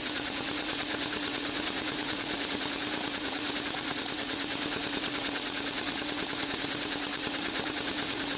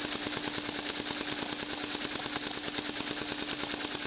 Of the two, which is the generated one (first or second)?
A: first